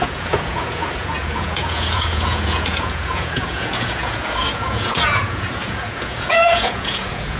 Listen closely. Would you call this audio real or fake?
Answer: fake